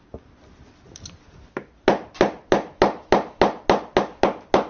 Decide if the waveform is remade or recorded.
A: recorded